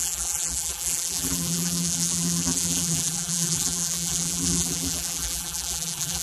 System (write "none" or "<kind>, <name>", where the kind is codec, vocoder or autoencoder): vocoder, BigVGAN v2